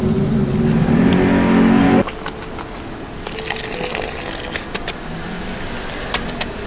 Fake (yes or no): no